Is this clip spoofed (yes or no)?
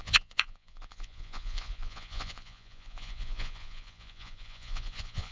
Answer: yes